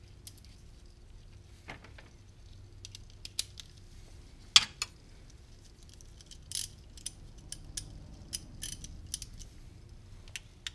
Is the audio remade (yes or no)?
no